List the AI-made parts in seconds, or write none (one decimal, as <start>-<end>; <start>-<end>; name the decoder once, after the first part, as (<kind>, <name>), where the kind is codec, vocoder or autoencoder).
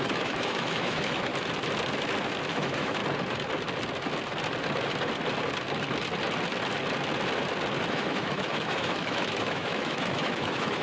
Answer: 0.0-1.3 (autoencoder, DAC-VAE); 2.5-3.0; 7.9-10.8